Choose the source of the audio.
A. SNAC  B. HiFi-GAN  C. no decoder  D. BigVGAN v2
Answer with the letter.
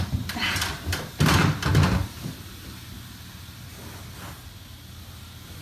C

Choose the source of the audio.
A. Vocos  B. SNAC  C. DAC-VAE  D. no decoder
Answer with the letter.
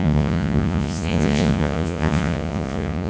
A